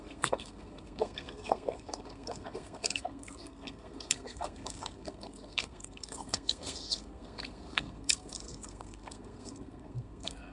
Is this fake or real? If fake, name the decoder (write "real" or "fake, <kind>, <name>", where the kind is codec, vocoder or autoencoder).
fake, codec, SNAC